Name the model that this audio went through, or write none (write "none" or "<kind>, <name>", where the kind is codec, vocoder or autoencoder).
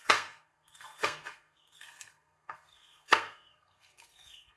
codec, SNAC